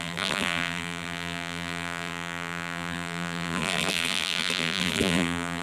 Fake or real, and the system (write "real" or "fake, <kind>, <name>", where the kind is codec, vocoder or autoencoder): fake, vocoder, BigVGAN v2